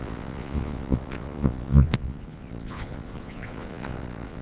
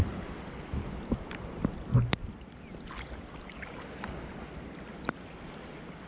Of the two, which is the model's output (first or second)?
first